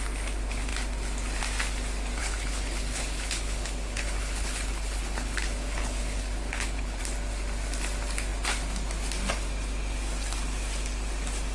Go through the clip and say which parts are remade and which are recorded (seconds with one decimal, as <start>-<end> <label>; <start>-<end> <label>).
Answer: 0.0-2.2 recorded; 2.2-7.0 remade; 7.0-11.5 recorded